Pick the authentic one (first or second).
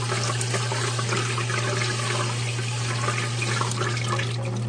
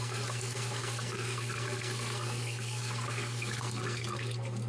first